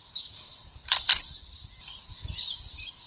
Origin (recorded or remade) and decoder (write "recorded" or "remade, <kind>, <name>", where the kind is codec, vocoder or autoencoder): remade, vocoder, BigVGAN v2